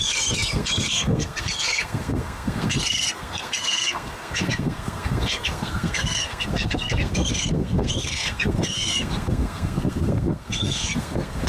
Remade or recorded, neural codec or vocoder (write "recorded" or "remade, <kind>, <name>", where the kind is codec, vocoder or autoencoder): remade, codec, SNAC